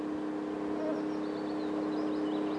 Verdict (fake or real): real